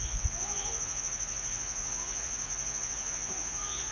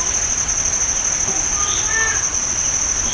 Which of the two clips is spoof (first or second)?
first